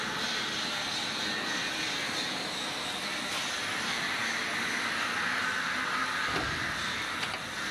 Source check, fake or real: real